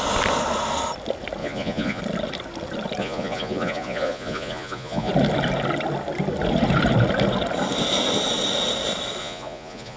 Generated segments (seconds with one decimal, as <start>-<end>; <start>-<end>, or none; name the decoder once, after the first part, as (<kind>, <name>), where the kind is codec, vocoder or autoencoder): 1.4-2.0 (vocoder, Vocos); 3.0-5.1; 9.2-10.0